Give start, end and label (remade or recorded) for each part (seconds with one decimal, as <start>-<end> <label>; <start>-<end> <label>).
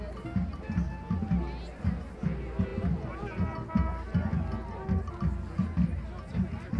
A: 0.0-6.8 recorded